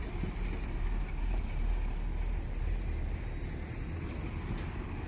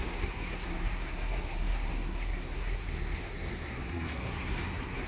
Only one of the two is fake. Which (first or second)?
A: second